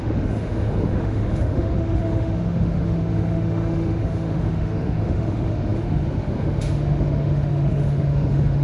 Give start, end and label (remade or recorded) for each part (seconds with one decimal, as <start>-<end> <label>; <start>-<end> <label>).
0.0-8.6 remade